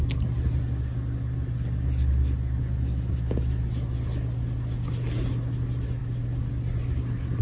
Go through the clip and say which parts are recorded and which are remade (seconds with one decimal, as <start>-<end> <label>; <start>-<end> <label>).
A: 0.0-7.4 recorded